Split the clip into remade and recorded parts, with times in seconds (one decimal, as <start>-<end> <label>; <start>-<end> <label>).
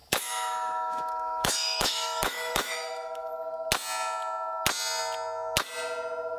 0.0-3.3 remade; 3.3-6.4 recorded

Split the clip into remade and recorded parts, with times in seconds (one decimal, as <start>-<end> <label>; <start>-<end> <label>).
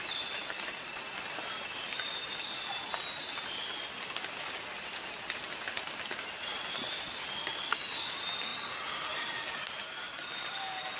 0.0-11.0 recorded